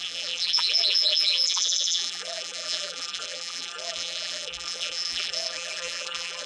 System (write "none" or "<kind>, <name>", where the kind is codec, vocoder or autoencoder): vocoder, BigVGAN v2